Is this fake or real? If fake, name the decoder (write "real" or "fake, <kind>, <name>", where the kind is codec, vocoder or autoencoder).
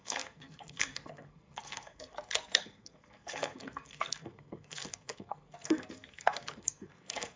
fake, codec, SNAC